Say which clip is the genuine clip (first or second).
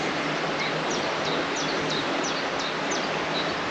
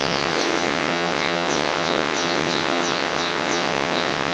first